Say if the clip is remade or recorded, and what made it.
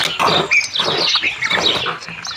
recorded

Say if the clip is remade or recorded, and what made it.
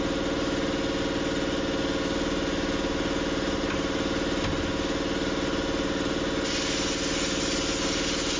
recorded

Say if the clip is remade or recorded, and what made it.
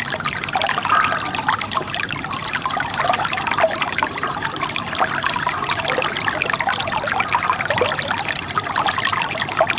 recorded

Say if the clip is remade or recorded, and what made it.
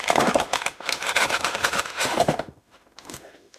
remade, autoencoder, DAC-VAE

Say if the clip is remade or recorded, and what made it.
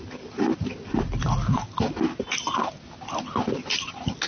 recorded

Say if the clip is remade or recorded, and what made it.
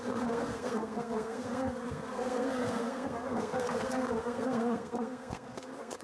remade, codec, SNAC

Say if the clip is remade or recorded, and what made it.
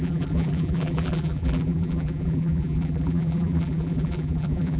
remade, vocoder, BigVGAN v2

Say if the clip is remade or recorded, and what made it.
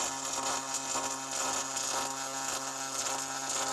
recorded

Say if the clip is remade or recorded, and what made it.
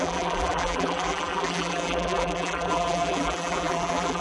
remade, vocoder, BigVGAN v2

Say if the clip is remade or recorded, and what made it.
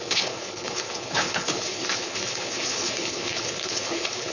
remade, codec, HILCodec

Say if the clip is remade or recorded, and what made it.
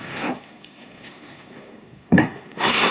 remade, codec, SNAC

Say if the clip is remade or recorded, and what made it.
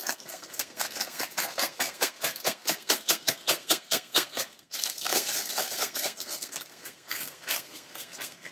remade, codec, SNAC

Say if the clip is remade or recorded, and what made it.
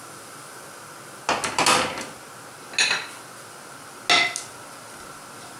recorded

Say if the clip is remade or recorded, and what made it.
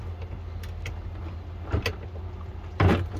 recorded